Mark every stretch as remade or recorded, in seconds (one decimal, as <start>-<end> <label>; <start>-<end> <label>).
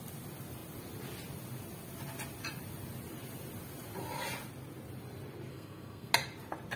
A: 0.0-5.5 recorded; 5.5-6.1 remade; 6.1-6.8 recorded